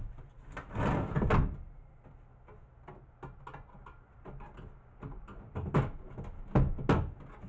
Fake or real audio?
real